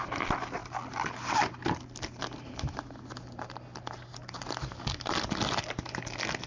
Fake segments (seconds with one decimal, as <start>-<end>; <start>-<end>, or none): none